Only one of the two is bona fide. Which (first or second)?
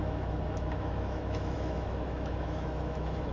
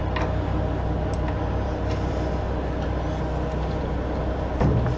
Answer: second